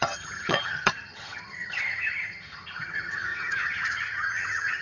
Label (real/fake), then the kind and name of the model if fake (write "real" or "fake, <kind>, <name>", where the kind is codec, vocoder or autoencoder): fake, vocoder, HiFi-GAN